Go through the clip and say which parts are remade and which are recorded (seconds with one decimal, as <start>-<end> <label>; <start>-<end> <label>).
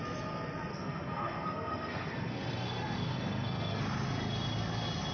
0.0-0.7 recorded; 0.7-3.8 remade; 3.8-5.1 recorded